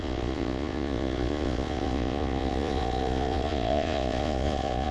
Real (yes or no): no